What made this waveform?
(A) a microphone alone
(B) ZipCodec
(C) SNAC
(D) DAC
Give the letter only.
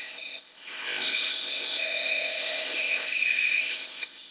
B